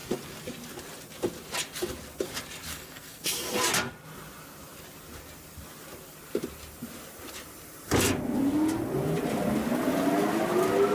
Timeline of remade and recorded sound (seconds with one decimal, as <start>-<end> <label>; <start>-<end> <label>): 0.0-2.7 recorded; 2.7-3.3 remade; 3.3-10.9 recorded